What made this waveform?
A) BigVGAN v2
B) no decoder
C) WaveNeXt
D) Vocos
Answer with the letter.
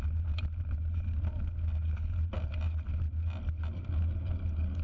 B